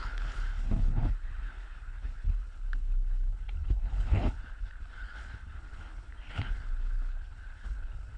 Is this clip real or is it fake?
fake